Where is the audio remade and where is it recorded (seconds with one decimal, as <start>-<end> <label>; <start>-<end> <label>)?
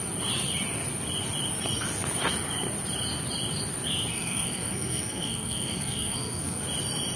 0.0-4.1 recorded; 4.1-6.6 remade; 6.6-7.2 recorded